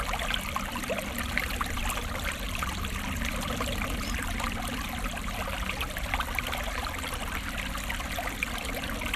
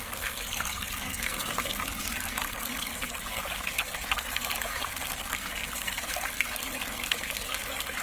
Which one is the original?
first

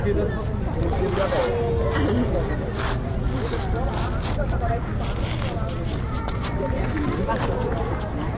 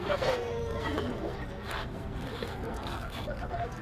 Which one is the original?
first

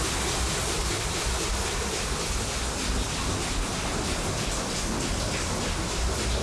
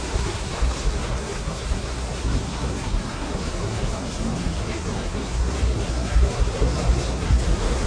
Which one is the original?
first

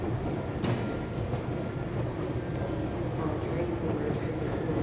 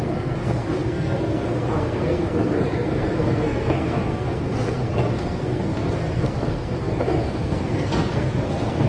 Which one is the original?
first